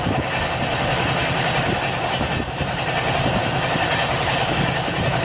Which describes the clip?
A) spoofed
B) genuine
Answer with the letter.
B